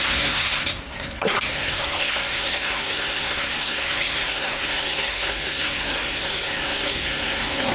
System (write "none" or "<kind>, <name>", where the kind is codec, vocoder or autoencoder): codec, SNAC